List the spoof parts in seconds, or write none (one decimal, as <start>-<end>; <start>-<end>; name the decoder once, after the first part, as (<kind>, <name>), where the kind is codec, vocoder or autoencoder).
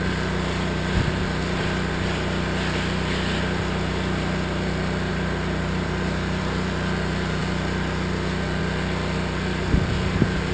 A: 5.1-6.4 (vocoder, BigVGAN v2)